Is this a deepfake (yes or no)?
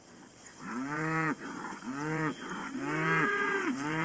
yes